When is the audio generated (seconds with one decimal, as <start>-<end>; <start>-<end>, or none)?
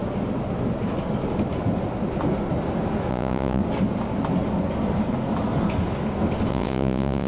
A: 3.1-3.6; 6.5-7.3